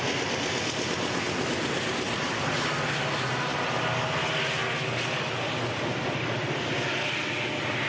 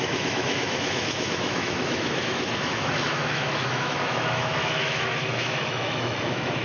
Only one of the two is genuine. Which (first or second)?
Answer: first